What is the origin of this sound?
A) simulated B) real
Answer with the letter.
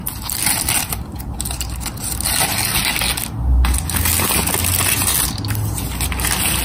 B